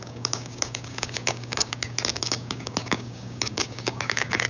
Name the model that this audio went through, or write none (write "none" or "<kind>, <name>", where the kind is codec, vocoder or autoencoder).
codec, DAC